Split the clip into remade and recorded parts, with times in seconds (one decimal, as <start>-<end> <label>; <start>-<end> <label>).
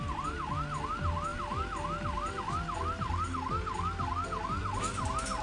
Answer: 0.0-5.4 recorded